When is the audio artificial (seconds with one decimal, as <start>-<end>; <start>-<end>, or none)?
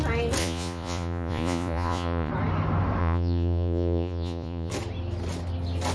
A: 0.4-2.3; 3.0-4.7